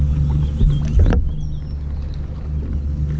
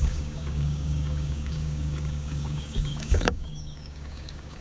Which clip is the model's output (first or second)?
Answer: second